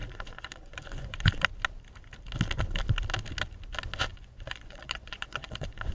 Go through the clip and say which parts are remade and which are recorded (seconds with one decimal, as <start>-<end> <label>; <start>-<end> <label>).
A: 0.0-1.4 remade; 1.4-4.1 recorded; 4.1-5.9 remade